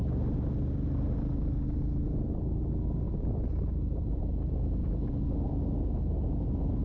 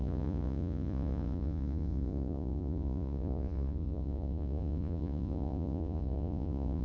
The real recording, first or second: first